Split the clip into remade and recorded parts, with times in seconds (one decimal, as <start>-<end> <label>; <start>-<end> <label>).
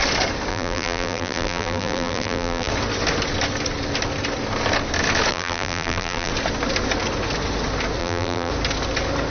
0.0-0.5 recorded; 0.5-2.7 remade; 2.7-5.3 recorded; 5.3-6.3 remade; 6.3-8.0 recorded; 8.0-8.5 remade; 8.5-9.3 recorded